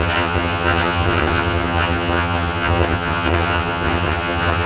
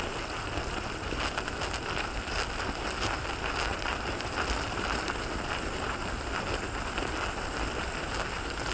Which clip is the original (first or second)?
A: second